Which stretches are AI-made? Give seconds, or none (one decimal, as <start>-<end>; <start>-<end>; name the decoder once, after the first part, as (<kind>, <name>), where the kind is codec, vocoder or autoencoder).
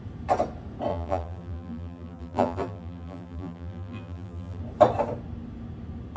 0.9-4.6 (vocoder, BigVGAN v2)